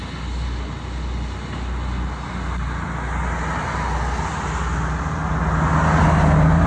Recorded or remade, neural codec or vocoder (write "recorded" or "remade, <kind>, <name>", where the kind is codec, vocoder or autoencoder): recorded